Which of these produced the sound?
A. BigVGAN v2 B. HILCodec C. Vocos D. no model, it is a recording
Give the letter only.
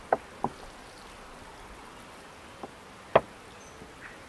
D